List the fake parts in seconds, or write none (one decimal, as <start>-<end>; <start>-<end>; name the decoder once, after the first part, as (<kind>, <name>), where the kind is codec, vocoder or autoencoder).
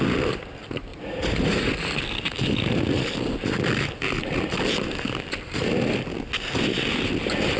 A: 0.9-1.7 (vocoder, Vocos)